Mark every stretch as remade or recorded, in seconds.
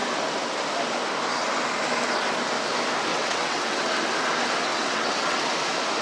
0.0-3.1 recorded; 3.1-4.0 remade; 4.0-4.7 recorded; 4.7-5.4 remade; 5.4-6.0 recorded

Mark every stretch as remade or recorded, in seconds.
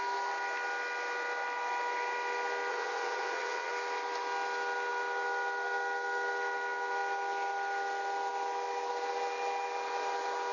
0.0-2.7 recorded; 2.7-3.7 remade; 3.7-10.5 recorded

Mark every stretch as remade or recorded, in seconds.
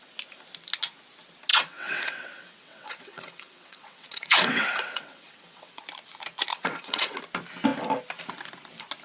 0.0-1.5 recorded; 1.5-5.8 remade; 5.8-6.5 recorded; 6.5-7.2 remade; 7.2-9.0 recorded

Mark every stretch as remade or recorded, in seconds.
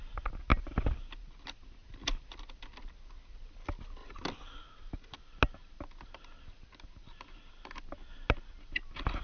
0.0-9.2 recorded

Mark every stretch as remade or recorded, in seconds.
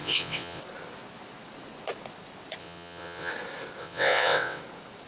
0.0-0.6 remade; 0.6-2.6 recorded; 2.6-3.3 remade; 3.3-3.8 recorded; 3.8-4.6 remade; 4.6-5.1 recorded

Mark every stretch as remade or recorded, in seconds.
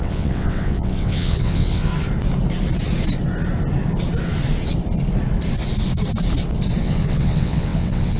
0.0-1.9 remade; 1.9-6.8 recorded; 6.8-8.2 remade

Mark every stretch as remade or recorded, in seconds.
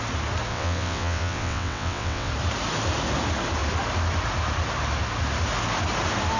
0.0-0.5 recorded; 0.5-2.3 remade; 2.3-6.4 recorded